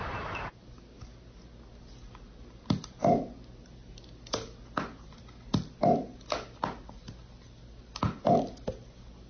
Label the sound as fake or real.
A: real